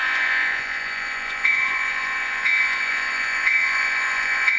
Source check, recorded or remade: remade